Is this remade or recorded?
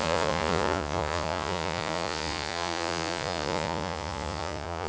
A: remade